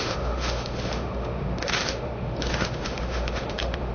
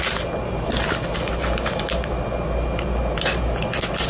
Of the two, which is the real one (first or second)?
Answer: second